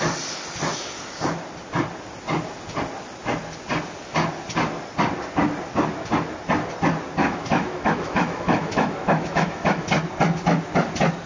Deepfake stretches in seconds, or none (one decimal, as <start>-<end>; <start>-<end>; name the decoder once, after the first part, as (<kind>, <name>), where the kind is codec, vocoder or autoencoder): 7.2-9.9 (autoencoder, DAC-VAE)